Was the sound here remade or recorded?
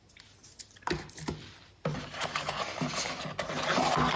recorded